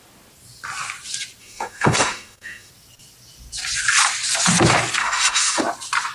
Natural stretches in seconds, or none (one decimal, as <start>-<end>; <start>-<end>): 0.0-1.4; 2.7-5.0; 5.6-6.1